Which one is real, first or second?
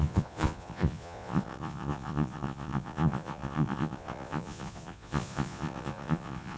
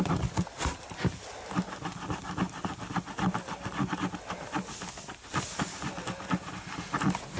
second